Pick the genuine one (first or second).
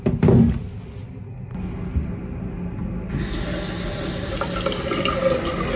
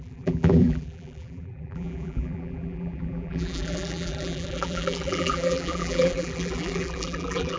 first